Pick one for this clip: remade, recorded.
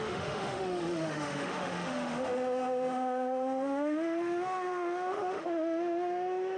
remade